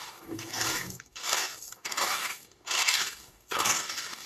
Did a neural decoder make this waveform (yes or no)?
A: yes